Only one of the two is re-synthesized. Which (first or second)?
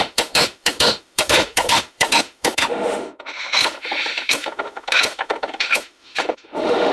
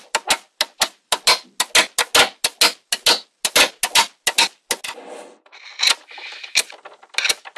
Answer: first